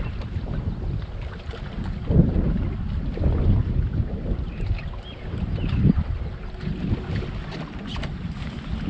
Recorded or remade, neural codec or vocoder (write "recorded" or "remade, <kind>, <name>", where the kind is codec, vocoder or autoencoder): recorded